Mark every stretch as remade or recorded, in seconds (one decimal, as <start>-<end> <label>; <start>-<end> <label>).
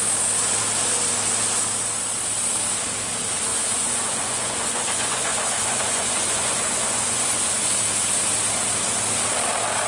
0.0-3.5 recorded; 3.5-7.8 remade; 7.8-9.9 recorded